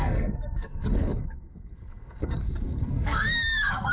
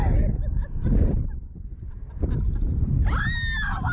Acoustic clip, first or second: second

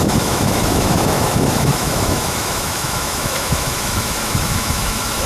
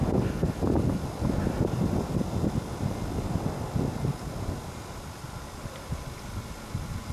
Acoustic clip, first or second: second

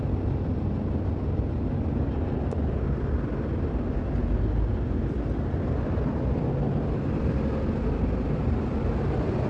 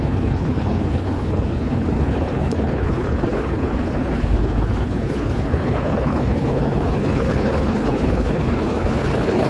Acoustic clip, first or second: first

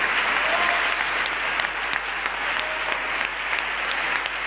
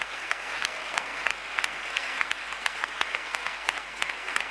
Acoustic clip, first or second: first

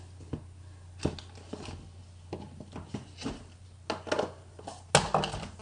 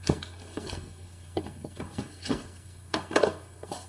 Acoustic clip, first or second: first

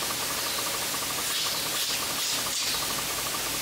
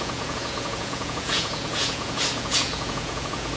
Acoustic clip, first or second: first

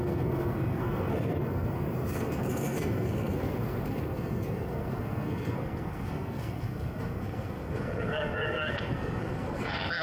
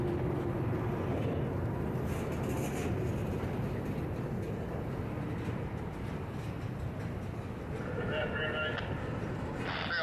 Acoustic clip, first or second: second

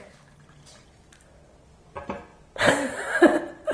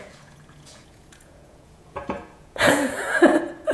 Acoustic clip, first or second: first